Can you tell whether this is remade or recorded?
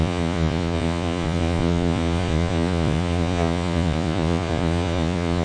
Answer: remade